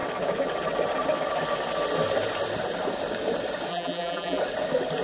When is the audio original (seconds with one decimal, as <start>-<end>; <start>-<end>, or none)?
0.0-3.7; 4.4-5.0